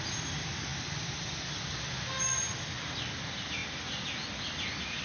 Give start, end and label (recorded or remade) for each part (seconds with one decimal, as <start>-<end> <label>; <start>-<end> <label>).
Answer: 0.0-5.0 recorded